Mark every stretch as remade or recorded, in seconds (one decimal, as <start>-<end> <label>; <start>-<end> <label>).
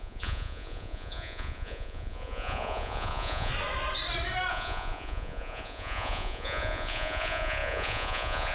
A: 0.0-3.5 remade; 3.5-4.5 recorded; 4.5-8.5 remade